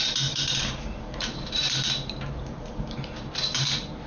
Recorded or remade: remade